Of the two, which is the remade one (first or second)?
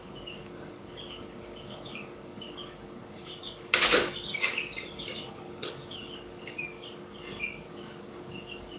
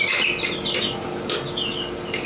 first